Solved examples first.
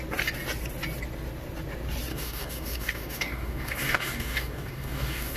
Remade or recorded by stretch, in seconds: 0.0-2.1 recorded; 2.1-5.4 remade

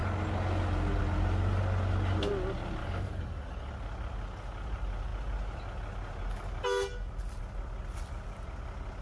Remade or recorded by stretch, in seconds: 0.0-2.8 recorded; 2.8-3.7 remade; 3.7-9.0 recorded

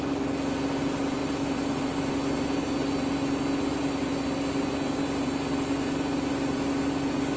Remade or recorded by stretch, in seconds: 0.0-7.4 recorded

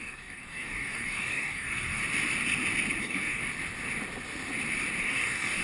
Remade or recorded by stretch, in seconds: 0.0-2.0 remade; 2.0-3.0 recorded; 3.0-3.4 remade; 3.4-5.0 recorded; 5.0-5.6 remade

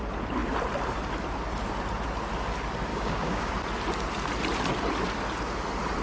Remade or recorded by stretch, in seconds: 0.0-2.9 recorded; 2.9-3.5 remade; 3.5-6.0 recorded

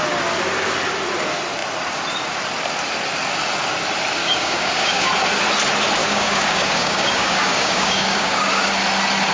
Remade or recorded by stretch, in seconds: 0.0-4.2 recorded; 4.2-5.1 remade; 5.1-6.0 recorded; 6.0-8.7 remade; 8.7-9.3 recorded